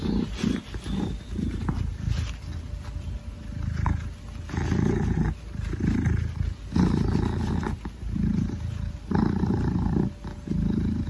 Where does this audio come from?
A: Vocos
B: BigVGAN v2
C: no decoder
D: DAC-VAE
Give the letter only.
C